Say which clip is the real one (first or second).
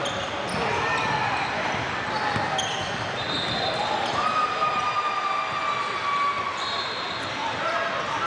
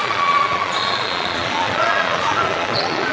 first